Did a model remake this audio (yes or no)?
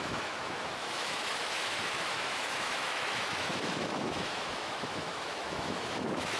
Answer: yes